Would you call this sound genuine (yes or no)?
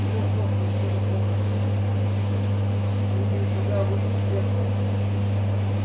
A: yes